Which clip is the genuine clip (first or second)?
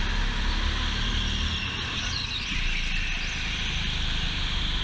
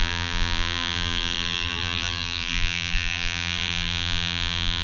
first